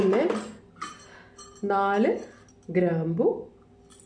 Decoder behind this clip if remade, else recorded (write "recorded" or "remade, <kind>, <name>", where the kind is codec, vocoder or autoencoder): recorded